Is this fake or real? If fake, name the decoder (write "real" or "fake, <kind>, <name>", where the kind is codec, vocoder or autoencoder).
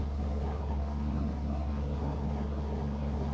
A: fake, codec, SNAC